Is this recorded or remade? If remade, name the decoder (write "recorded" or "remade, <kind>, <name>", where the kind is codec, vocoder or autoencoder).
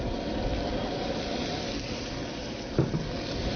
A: recorded